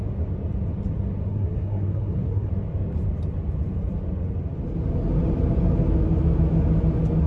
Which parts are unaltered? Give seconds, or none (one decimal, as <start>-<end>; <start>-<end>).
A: 0.0-1.3; 2.5-7.3